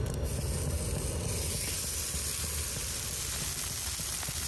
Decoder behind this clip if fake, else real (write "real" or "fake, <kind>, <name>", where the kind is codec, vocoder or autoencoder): real